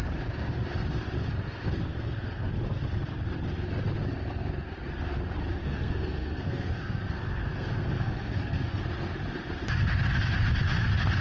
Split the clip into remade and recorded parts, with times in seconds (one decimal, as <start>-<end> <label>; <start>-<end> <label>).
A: 0.0-1.9 recorded; 1.9-2.5 remade; 2.5-5.6 recorded; 5.6-8.8 remade; 8.8-11.2 recorded